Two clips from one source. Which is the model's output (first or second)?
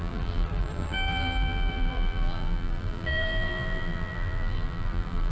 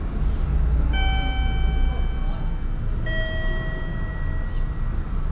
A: first